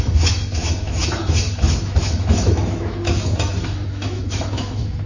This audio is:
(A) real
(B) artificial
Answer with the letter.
B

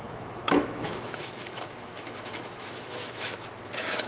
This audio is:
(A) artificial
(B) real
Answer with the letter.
A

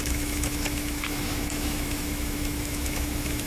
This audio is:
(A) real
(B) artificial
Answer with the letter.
B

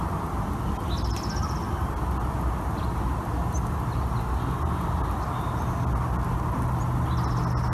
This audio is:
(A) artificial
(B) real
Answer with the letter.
B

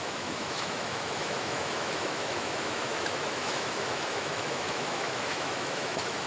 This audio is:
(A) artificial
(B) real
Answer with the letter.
A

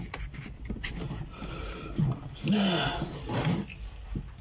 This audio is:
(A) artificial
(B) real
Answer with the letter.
B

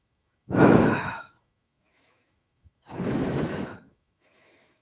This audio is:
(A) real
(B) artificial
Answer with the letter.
B